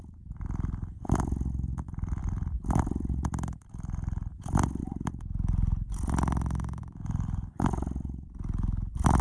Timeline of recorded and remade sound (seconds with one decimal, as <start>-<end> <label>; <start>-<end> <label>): 0.0-2.2 recorded; 2.2-4.8 remade; 4.8-9.2 recorded

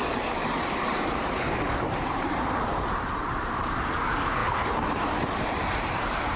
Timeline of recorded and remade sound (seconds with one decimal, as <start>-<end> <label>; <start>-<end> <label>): 0.0-6.4 remade

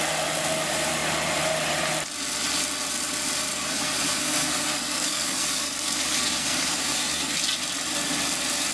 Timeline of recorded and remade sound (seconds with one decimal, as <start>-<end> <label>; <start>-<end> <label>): 0.0-3.5 recorded; 3.5-7.4 remade; 7.4-8.7 recorded

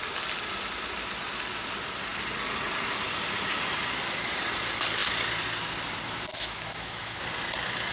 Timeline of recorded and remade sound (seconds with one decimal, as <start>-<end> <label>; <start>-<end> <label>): 0.0-6.3 recorded; 6.3-7.2 remade; 7.2-7.9 recorded